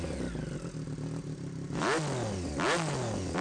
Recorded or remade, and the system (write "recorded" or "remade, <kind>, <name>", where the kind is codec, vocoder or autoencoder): recorded